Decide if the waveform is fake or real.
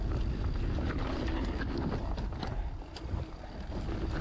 real